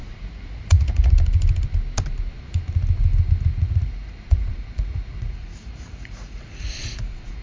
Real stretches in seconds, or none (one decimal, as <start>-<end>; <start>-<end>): 1.1-3.5